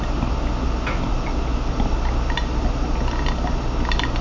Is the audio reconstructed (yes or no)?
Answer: no